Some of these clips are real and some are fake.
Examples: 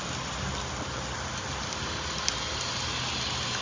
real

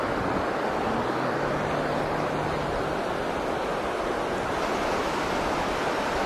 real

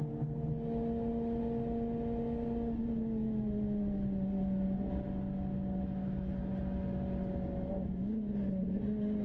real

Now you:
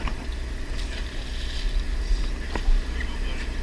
real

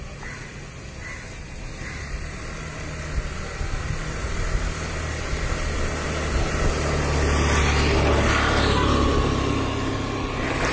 real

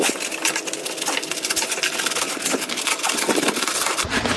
real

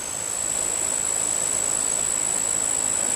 real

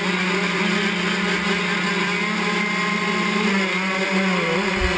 real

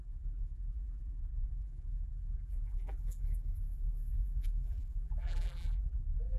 fake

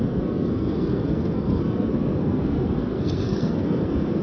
fake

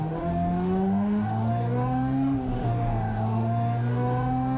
fake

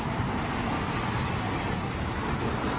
real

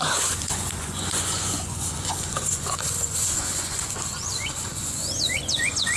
fake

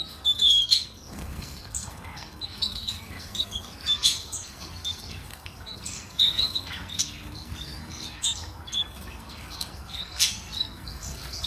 fake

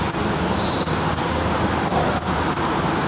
real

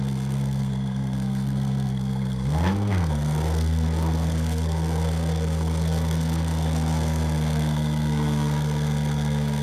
fake